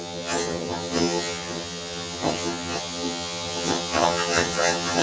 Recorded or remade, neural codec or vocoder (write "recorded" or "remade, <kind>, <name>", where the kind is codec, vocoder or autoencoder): remade, vocoder, HiFi-GAN